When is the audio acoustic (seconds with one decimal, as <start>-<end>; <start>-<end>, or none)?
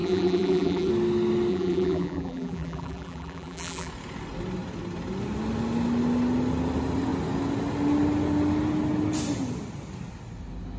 0.9-1.5; 3.9-10.8